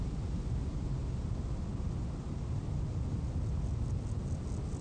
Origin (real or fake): real